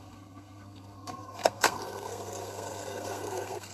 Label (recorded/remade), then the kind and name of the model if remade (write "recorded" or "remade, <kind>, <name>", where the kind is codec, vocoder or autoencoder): remade, codec, SNAC